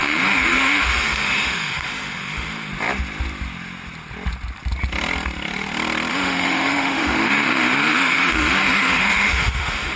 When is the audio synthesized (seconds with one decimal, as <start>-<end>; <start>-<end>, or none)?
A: 0.0-2.7; 6.1-10.0